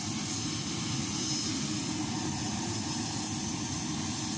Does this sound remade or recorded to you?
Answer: recorded